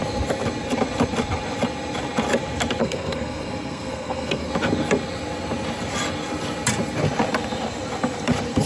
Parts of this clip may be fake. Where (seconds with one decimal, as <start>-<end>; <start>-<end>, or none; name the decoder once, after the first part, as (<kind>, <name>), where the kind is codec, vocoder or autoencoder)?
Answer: 2.8-4.5 (codec, SNAC)